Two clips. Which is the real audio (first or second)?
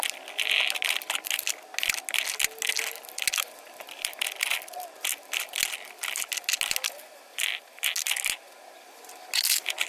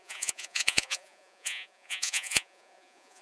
first